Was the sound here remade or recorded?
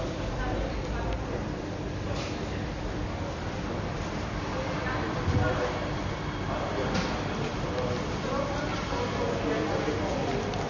recorded